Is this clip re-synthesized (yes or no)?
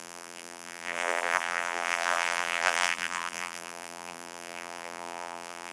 yes